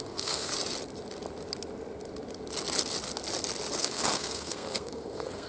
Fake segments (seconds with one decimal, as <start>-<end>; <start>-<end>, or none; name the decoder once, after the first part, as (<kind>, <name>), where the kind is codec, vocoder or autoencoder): 0.0-0.5 (codec, SNAC); 3.8-5.5